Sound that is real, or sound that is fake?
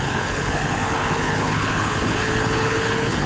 fake